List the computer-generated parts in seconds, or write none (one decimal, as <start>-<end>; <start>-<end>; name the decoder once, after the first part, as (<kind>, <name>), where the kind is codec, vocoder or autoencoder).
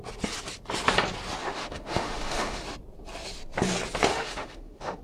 1.4-2.6 (autoencoder, DAC-VAE); 4.1-5.0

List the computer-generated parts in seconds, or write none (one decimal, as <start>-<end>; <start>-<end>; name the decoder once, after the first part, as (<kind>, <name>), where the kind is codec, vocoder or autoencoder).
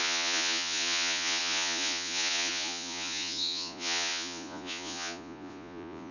0.0-6.1 (vocoder, Vocos)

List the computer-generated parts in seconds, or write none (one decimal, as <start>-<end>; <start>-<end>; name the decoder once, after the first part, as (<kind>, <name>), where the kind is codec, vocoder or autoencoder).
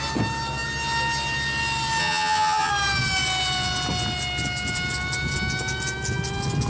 2.0-2.7 (vocoder, HiFi-GAN)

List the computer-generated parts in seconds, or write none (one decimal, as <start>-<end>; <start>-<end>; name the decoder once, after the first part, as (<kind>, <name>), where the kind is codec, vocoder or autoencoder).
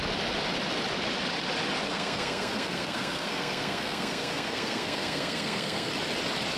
1.9-5.9 (codec, SNAC)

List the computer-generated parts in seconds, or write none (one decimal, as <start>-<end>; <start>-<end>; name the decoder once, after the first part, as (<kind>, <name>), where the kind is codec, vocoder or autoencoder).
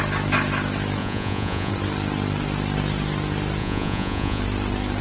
1.0-1.7 (vocoder, Vocos); 3.6-4.4